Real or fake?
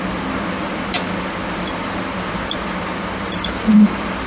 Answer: real